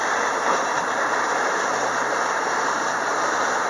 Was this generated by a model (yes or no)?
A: yes